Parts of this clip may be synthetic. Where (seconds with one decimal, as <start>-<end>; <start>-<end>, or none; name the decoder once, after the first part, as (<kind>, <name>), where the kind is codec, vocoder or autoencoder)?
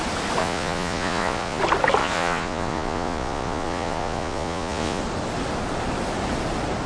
0.4-1.6 (vocoder, Vocos); 2.0-5.0